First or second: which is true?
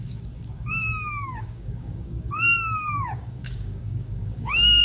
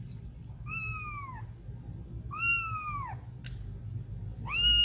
second